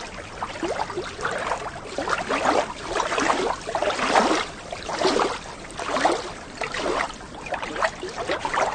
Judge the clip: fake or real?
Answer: real